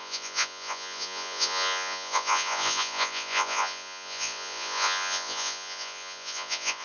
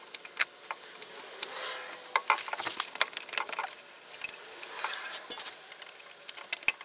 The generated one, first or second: first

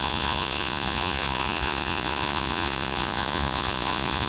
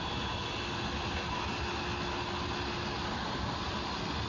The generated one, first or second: first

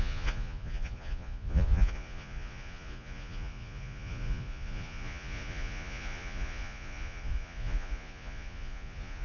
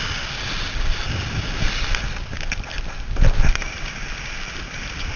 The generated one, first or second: first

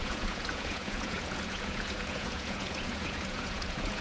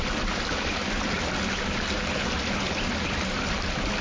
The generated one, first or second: first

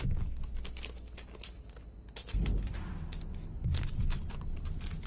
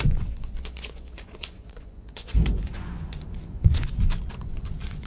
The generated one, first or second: second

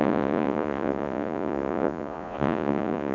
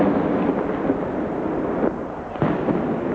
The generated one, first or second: first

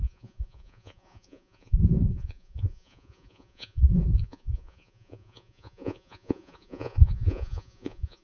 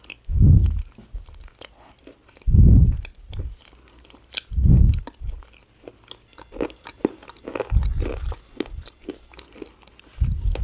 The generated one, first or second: first